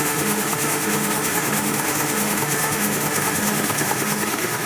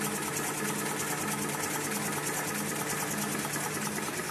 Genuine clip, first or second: second